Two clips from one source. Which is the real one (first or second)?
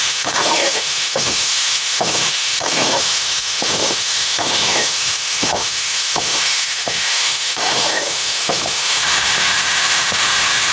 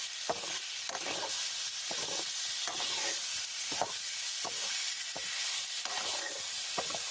second